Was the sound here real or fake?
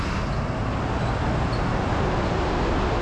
real